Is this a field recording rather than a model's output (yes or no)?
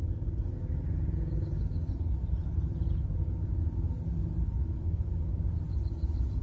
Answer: yes